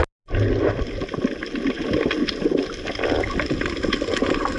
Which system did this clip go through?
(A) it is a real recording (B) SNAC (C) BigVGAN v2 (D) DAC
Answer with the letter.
A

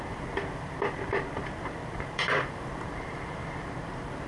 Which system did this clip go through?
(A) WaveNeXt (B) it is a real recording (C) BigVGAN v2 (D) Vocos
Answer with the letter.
C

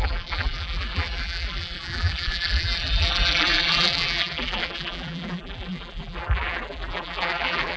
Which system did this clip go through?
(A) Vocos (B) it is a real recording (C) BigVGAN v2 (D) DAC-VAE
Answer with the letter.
C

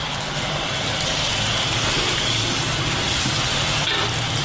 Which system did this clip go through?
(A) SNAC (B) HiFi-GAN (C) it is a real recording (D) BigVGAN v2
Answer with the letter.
D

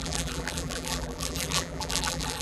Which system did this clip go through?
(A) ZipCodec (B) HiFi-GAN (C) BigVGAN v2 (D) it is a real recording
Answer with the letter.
C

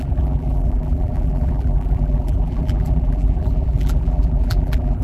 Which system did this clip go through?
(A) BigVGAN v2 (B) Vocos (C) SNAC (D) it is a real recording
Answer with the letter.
A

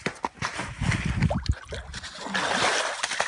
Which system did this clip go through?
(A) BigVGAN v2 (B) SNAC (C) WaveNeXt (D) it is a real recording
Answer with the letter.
D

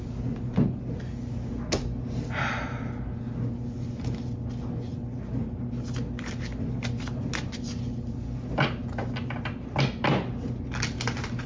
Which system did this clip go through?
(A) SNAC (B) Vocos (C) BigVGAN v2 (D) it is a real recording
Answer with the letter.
D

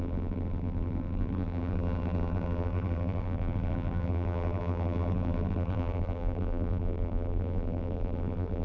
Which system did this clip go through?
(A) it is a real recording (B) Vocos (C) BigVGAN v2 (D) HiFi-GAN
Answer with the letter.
C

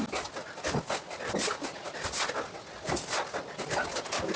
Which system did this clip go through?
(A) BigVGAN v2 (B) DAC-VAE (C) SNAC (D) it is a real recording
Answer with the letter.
D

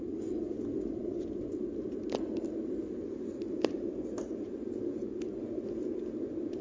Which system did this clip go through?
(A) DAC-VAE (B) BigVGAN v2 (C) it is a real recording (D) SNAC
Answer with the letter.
C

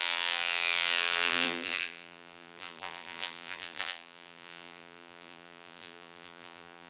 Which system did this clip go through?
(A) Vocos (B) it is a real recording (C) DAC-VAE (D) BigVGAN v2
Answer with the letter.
D